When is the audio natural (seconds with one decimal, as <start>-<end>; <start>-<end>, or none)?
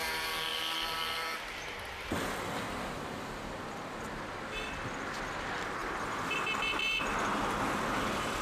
0.0-8.4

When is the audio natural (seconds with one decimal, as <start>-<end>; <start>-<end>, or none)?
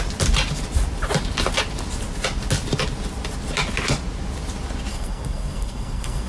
0.0-4.9